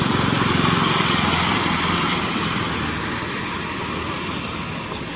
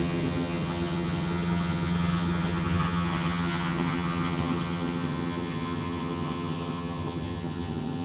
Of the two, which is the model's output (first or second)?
second